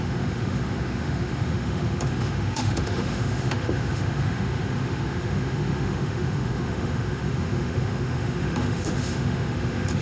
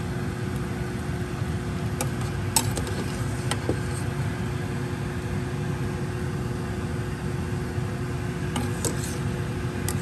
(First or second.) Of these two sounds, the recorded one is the second